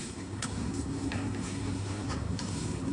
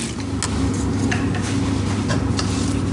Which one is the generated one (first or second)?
first